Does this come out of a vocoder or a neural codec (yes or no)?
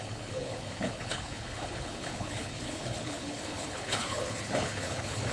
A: yes